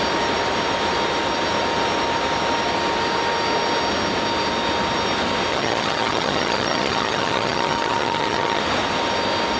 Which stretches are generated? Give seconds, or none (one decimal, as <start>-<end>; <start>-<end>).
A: 5.5-8.6